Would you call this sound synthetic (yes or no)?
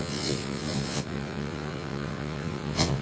yes